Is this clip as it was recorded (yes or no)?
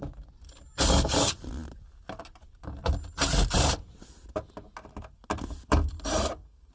yes